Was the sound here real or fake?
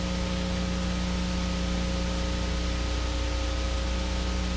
real